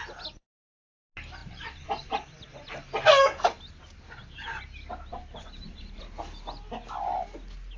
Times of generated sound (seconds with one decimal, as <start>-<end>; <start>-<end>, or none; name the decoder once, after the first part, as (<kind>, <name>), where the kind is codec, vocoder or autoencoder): 1.4-2.8 (vocoder, BigVGAN v2); 5.1-6.0